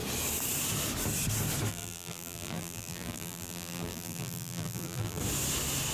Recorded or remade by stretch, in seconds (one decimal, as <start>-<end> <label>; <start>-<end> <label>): 0.0-1.7 recorded; 1.7-5.2 remade; 5.2-5.9 recorded